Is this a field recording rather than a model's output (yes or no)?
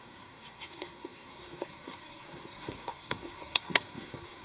no